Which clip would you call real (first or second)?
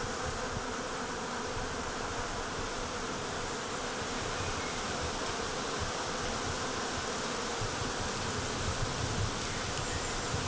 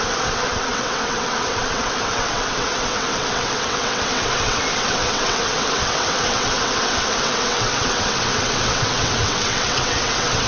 first